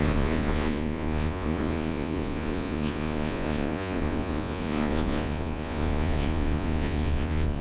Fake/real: fake